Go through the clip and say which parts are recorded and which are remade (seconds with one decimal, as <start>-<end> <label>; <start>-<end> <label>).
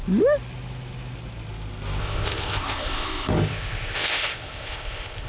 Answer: 0.0-2.0 recorded; 2.0-5.3 remade